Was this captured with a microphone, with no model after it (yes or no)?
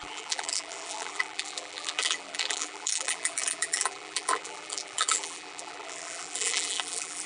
no